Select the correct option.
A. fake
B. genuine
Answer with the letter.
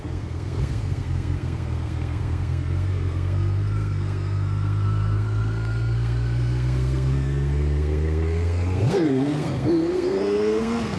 A